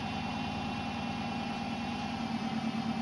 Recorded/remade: recorded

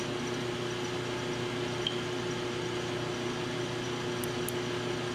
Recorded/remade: recorded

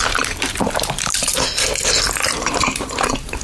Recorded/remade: remade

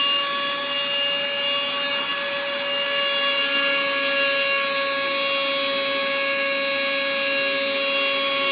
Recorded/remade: recorded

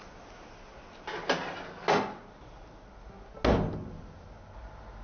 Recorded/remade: recorded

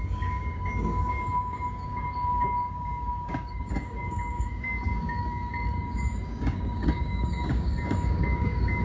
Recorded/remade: remade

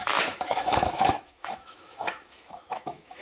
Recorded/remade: remade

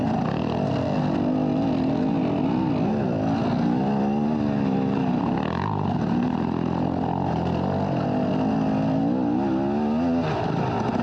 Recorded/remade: recorded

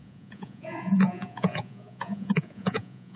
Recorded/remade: remade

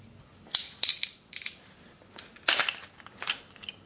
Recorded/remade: recorded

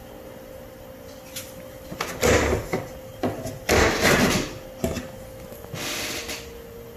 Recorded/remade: recorded